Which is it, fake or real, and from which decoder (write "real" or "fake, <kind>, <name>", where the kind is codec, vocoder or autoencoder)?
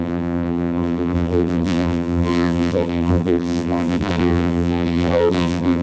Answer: fake, vocoder, BigVGAN v2